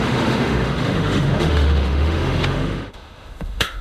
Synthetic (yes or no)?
yes